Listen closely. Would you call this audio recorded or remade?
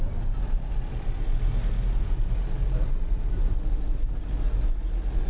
recorded